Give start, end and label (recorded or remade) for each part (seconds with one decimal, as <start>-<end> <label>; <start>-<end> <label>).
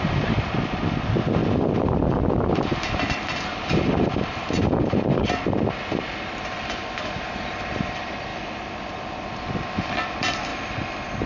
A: 0.0-8.3 remade; 8.3-8.9 recorded; 8.9-10.5 remade; 10.5-11.3 recorded